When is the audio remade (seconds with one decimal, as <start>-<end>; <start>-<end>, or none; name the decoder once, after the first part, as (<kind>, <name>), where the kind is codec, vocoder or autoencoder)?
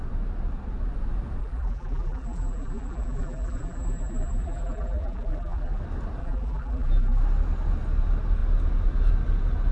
1.4-5.8 (vocoder, BigVGAN v2); 6.2-7.2